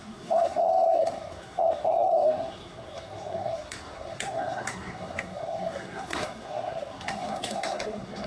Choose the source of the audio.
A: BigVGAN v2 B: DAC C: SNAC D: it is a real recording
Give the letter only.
C